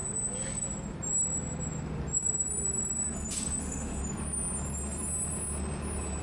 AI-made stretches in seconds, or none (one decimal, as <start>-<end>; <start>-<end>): 3.6-4.0